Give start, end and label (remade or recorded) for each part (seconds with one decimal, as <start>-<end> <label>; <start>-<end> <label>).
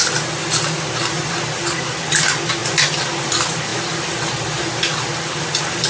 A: 0.0-5.9 recorded